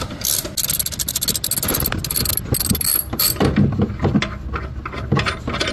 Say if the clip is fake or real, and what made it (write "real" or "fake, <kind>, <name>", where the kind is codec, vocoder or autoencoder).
real